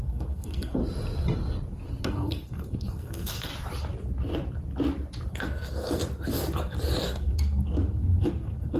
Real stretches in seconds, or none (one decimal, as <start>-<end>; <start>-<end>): 0.8-2.0; 3.5-5.3; 6.0-7.0